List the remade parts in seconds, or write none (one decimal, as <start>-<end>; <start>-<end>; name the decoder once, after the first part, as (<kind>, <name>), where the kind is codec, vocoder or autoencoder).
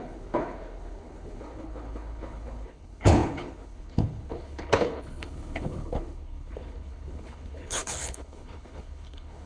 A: 0.0-9.5 (codec, HILCodec)